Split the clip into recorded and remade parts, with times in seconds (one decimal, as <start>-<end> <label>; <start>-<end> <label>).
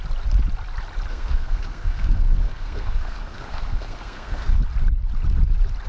0.0-1.1 recorded; 1.1-4.6 remade; 4.6-5.9 recorded